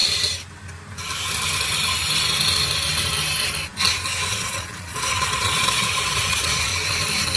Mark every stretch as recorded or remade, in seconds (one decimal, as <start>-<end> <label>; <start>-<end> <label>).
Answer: 0.0-4.3 recorded; 4.3-6.7 remade; 6.7-7.4 recorded